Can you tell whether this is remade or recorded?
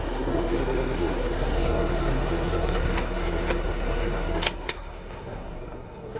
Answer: remade